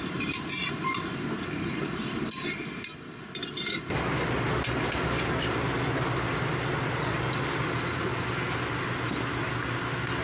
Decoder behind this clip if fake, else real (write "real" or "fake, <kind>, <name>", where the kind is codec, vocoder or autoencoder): real